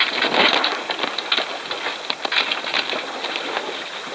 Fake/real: real